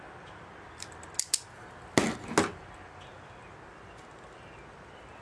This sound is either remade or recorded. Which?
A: recorded